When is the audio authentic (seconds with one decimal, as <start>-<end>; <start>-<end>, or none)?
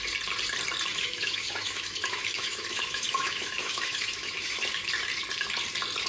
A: 0.0-0.9; 4.6-6.1